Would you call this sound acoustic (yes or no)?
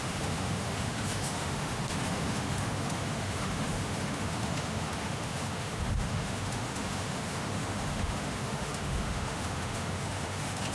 no